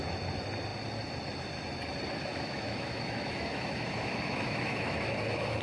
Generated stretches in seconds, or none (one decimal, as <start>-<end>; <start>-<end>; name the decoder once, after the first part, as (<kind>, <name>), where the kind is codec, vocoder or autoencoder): 2.3-5.6 (autoencoder, DAC-VAE)